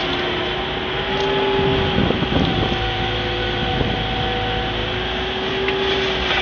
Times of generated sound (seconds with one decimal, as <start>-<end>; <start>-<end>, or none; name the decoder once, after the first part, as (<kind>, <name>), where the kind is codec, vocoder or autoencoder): none